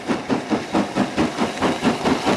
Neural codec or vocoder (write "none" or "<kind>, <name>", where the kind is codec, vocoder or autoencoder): none